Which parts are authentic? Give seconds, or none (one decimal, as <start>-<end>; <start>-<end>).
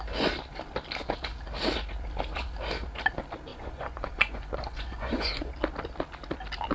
0.0-3.5; 5.5-6.7